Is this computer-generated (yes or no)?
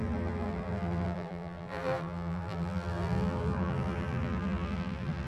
yes